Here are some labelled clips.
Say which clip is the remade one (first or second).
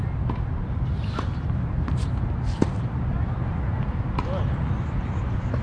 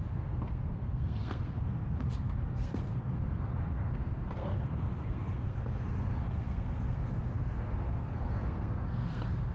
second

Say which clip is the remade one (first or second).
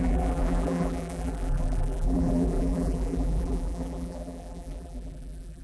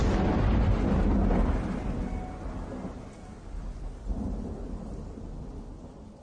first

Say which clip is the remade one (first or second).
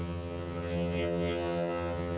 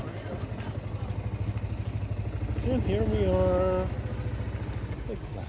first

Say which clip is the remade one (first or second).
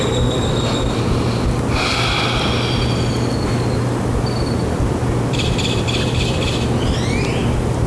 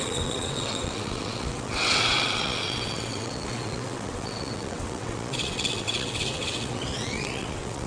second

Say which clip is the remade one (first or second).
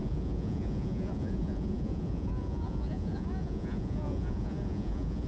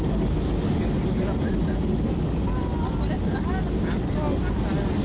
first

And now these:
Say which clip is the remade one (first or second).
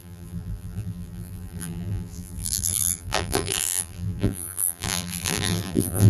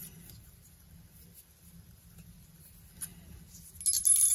first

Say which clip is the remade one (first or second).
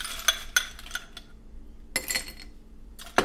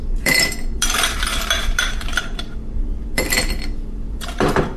second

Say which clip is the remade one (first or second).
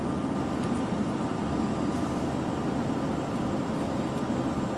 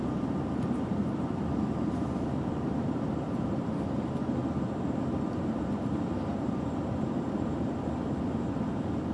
second